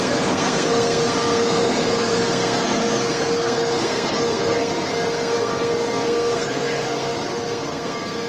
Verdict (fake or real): fake